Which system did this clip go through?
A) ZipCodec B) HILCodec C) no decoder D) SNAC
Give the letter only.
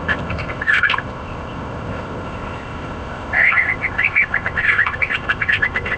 A